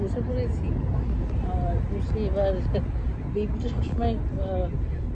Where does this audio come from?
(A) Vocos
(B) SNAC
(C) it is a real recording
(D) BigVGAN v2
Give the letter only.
C